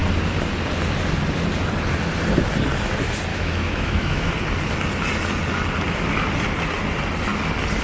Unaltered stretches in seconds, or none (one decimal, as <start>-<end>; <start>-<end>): 0.0-3.3; 4.3-7.8